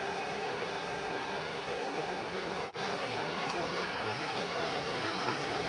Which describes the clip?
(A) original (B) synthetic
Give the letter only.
B